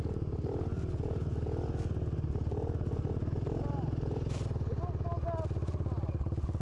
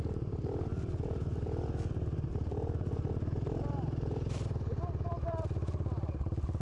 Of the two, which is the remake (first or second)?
second